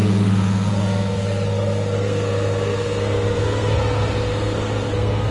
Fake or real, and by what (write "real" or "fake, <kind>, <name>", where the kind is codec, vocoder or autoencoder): fake, codec, SNAC